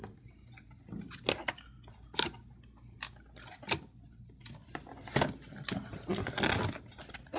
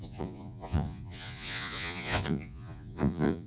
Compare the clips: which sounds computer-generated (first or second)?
second